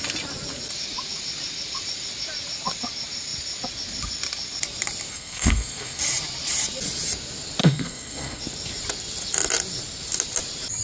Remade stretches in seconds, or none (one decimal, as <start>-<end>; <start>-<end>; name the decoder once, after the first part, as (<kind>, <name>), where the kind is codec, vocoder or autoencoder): 5.1-6.0 (codec, SNAC); 7.6-8.4